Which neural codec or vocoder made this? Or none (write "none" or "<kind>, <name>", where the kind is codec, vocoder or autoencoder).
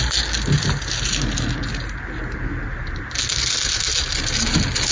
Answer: none